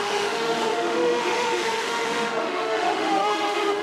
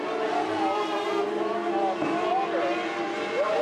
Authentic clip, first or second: second